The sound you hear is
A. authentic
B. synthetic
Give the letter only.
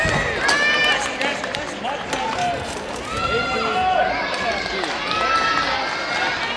A